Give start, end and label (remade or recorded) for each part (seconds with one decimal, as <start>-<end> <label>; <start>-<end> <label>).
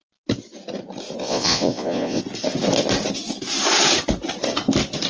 0.0-1.2 recorded; 1.2-2.2 remade; 2.2-5.1 recorded